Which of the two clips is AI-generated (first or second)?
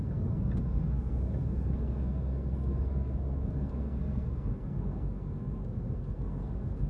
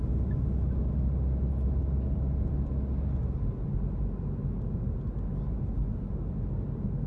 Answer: first